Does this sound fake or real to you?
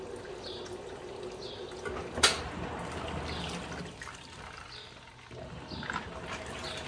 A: real